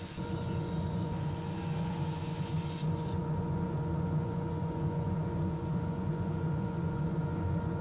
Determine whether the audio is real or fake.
fake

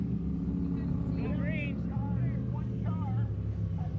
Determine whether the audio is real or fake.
real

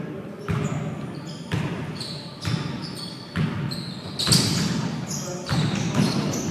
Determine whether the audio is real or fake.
real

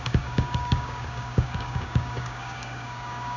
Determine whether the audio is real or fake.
fake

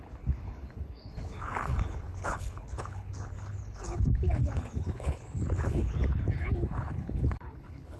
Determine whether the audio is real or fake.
fake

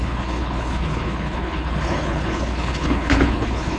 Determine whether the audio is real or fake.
fake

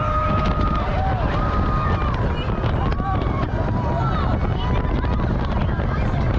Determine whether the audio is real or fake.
real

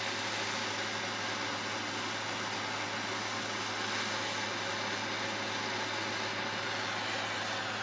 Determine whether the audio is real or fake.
real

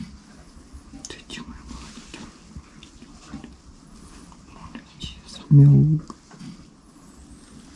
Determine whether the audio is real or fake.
real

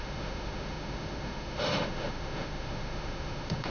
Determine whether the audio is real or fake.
fake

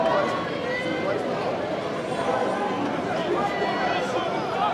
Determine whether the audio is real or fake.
real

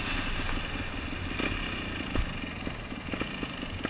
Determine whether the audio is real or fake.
real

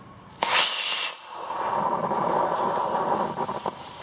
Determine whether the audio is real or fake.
real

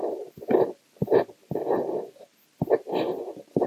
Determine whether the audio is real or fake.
real